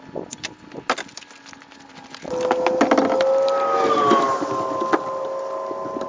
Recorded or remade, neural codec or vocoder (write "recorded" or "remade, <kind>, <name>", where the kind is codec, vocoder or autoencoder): recorded